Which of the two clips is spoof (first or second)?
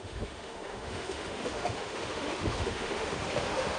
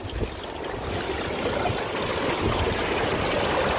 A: first